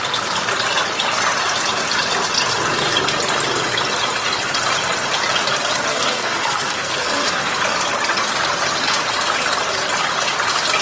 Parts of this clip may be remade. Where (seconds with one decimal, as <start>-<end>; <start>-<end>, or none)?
5.9-7.5